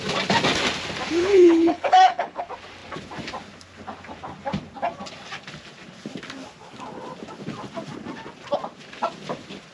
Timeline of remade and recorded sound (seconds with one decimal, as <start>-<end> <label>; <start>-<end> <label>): 0.0-1.2 recorded; 1.2-2.4 remade; 2.4-9.7 recorded